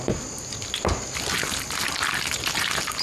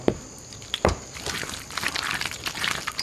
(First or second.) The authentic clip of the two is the first